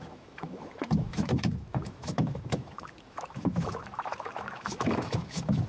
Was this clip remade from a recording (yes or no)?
yes